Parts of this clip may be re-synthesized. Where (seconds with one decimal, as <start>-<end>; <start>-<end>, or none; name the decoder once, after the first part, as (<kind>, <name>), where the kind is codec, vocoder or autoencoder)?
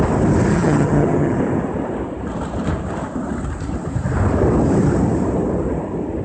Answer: 0.5-1.4 (vocoder, HiFi-GAN)